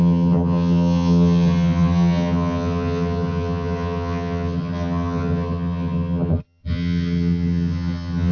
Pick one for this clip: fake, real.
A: fake